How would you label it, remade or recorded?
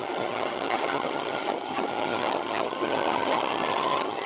remade